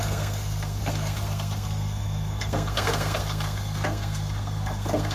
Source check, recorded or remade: remade